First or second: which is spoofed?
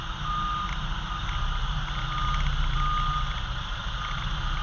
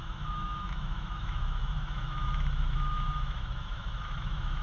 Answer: second